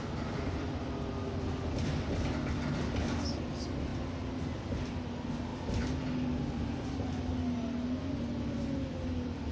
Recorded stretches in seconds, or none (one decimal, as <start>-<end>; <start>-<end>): 0.0-9.5